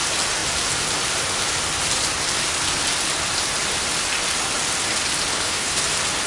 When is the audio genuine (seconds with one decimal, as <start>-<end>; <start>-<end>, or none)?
0.0-5.3; 5.8-6.3